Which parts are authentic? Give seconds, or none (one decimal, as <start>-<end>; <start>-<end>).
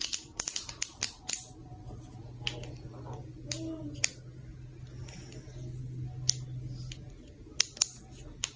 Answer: 0.0-8.6